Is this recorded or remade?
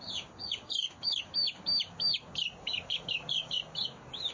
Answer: remade